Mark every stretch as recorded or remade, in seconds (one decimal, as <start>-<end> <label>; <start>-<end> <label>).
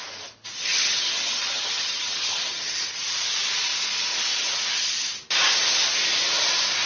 0.0-0.6 recorded; 0.6-2.6 remade; 2.6-6.9 recorded